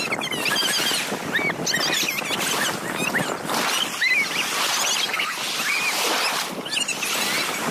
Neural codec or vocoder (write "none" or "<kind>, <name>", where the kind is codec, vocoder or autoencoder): none